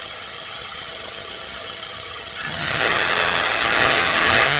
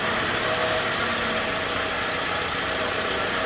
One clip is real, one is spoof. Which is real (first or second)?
second